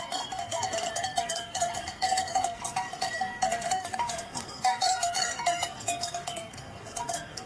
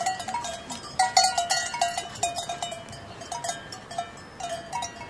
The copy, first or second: first